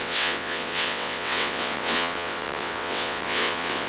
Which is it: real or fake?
fake